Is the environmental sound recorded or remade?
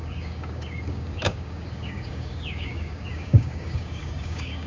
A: remade